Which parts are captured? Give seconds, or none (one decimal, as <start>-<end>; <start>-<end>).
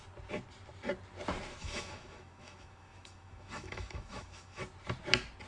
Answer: 0.0-1.6; 4.6-5.5